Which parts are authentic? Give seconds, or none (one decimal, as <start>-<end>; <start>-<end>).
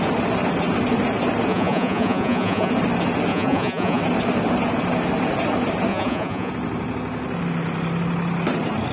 0.0-1.5; 2.7-3.3; 4.0-5.9; 6.5-8.9